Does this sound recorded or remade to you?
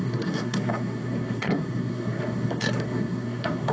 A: remade